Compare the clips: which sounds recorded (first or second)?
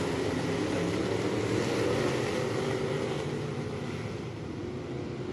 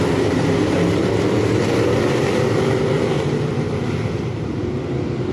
first